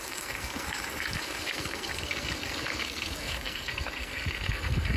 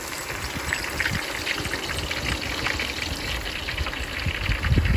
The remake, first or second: first